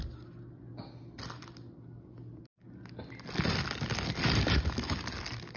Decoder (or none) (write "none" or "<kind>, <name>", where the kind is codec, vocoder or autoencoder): none